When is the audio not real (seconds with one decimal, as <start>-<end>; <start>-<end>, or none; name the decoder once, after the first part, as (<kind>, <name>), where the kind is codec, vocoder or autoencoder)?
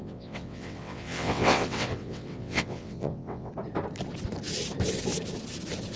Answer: 0.0-3.5 (vocoder, WaveNeXt)